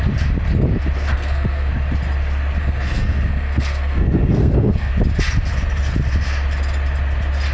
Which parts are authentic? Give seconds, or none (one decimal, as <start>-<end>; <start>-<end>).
0.0-1.1; 1.7-2.6; 4.9-7.5